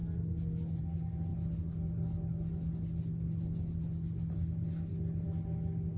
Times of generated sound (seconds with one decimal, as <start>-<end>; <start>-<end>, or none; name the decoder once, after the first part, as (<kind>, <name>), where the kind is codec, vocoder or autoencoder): none